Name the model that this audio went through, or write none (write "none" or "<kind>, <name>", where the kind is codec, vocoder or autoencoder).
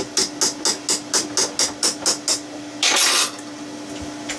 none